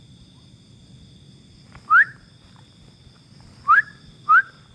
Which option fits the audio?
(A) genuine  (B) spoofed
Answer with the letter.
A